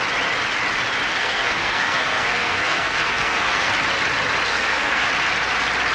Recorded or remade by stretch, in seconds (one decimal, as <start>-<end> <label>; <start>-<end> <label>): 0.0-1.1 recorded; 1.1-3.7 remade; 3.7-4.5 recorded; 4.5-5.1 remade; 5.1-5.9 recorded